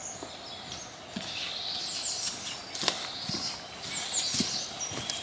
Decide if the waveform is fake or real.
real